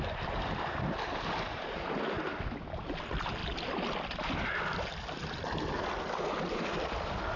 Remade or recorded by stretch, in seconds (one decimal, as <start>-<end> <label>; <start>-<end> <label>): 0.0-7.4 recorded